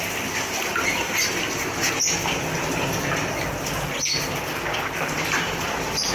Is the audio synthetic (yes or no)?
no